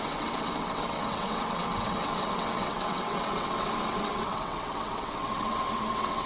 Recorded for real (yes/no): no